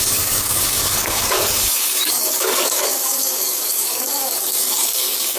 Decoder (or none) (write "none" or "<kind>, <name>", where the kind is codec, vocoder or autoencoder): codec, DAC